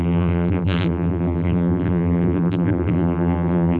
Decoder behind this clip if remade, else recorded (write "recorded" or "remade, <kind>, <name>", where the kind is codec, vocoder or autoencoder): remade, vocoder, BigVGAN v2